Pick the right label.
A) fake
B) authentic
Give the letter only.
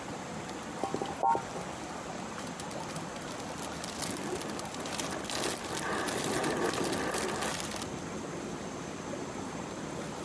B